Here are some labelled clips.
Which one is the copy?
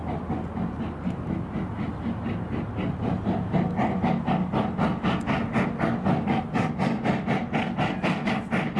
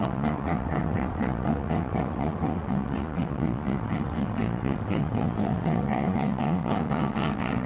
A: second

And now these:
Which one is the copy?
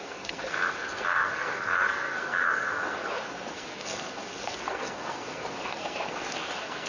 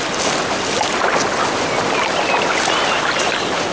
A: first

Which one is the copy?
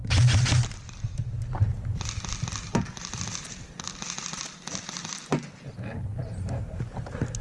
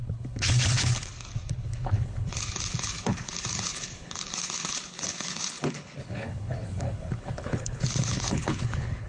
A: second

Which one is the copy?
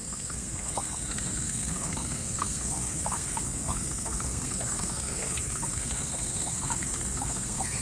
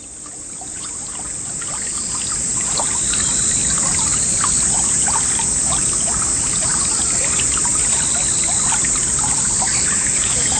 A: first